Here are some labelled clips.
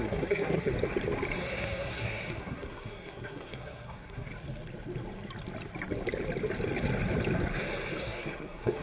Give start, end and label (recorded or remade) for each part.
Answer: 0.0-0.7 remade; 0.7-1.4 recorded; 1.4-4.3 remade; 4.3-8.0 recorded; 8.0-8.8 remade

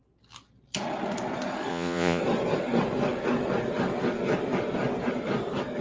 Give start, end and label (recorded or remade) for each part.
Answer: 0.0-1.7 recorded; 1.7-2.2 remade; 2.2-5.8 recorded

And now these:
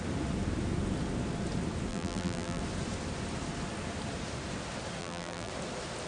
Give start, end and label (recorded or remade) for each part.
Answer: 0.0-1.9 recorded; 1.9-2.6 remade; 2.6-5.0 recorded; 5.0-5.5 remade; 5.5-6.1 recorded

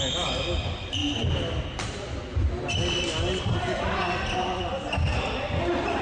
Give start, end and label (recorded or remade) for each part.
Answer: 0.0-6.0 recorded

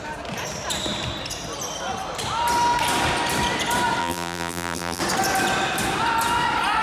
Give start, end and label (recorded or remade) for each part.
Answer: 0.0-4.0 recorded; 4.0-5.0 remade; 5.0-6.8 recorded

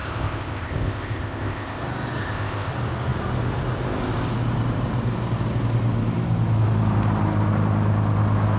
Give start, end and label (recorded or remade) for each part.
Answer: 0.0-1.8 remade; 1.8-2.2 recorded; 2.2-2.7 remade; 2.7-8.6 recorded

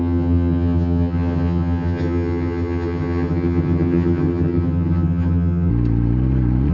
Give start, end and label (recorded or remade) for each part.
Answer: 0.0-5.7 remade; 5.7-6.7 recorded

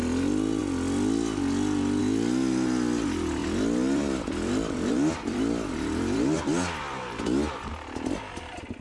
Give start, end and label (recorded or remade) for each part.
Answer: 0.0-3.4 recorded; 3.4-6.4 remade; 6.4-8.8 recorded